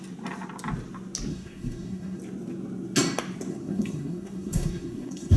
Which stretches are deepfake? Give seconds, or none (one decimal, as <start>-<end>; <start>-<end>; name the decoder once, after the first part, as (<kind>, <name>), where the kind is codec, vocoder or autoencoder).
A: 1.3-2.2 (codec, SNAC); 3.5-5.4